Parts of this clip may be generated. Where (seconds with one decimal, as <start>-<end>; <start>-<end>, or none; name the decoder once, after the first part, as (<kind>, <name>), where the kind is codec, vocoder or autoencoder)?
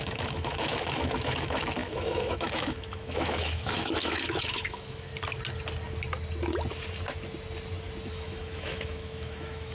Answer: 0.0-5.1 (autoencoder, DAC-VAE); 8.1-9.7